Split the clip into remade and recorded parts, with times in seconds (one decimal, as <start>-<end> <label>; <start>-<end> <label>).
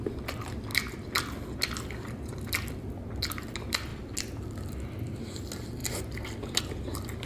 0.0-7.3 recorded